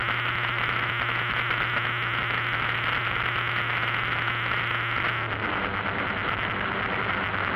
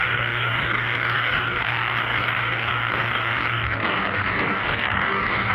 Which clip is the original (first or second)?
first